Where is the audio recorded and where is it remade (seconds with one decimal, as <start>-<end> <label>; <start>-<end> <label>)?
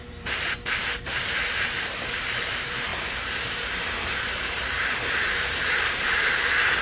0.0-2.9 remade; 2.9-3.7 recorded; 3.7-6.8 remade